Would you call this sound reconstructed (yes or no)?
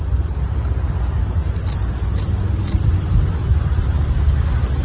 no